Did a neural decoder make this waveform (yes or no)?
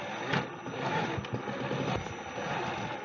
no